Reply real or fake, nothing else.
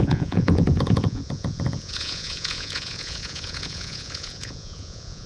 fake